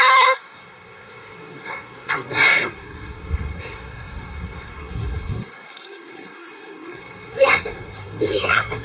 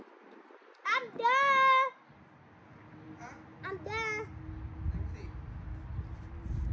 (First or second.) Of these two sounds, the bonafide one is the second